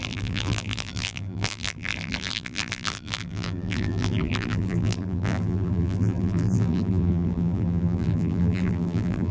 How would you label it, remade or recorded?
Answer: remade